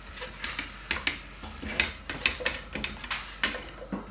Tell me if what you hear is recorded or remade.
recorded